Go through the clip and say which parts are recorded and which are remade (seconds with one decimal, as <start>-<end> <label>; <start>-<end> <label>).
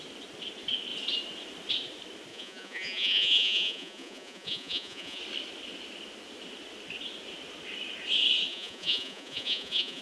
0.0-2.3 recorded; 2.3-5.2 remade; 5.2-8.5 recorded; 8.5-10.0 remade